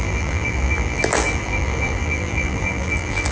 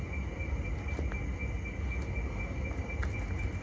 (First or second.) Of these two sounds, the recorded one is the second